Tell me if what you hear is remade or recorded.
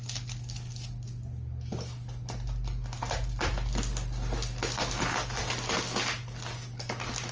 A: recorded